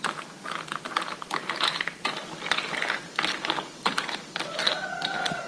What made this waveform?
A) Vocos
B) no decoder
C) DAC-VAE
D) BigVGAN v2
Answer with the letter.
B